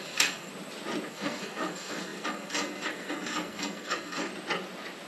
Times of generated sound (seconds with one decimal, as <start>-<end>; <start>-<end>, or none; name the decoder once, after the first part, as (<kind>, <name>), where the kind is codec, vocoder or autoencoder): 0.0-0.5 (codec, SNAC); 1.1-4.3